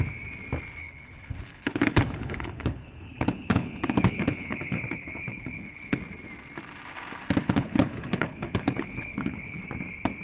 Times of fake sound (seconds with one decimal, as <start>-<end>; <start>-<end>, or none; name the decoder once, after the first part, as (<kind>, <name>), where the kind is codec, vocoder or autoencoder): 0.8-6.0 (codec, HILCodec); 7.4-9.6

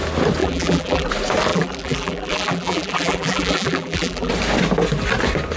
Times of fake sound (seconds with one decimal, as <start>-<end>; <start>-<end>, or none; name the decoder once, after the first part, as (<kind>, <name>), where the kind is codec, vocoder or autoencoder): 0.4-1.1 (vocoder, BigVGAN v2); 1.5-4.3